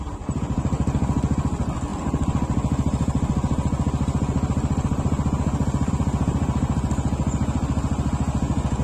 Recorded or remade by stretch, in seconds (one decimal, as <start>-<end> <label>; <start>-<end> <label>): 0.0-8.8 recorded